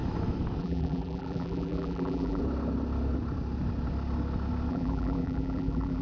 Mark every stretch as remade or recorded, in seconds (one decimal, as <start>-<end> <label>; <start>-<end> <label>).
0.0-0.6 recorded; 0.6-2.4 remade; 2.4-4.7 recorded; 4.7-6.0 remade